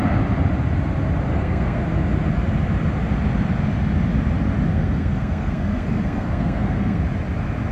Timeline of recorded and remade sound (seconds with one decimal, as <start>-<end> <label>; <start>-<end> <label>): 0.0-1.3 recorded; 1.3-1.8 remade; 1.8-4.7 recorded; 4.7-7.0 remade; 7.0-7.7 recorded